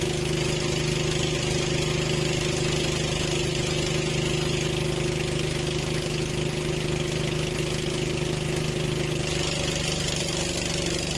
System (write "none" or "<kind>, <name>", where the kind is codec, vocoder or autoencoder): none